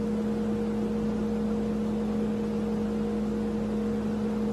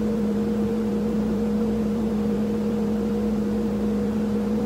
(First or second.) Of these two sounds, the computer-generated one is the second